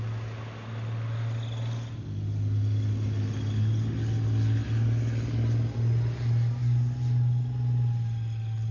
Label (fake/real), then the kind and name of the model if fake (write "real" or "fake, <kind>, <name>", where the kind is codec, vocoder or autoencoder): real